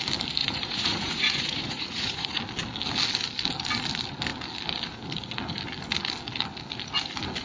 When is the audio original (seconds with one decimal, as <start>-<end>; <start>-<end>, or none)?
0.0-0.4; 2.4-7.4